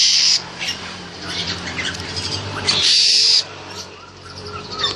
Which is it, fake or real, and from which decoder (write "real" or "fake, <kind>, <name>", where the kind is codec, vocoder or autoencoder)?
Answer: fake, vocoder, BigVGAN v2